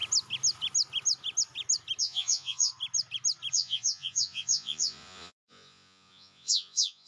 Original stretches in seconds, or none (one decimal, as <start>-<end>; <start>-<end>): 0.0-2.0; 2.7-3.5